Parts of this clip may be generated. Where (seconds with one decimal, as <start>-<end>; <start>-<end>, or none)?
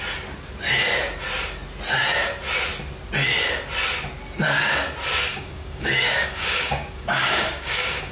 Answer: 5.3-8.1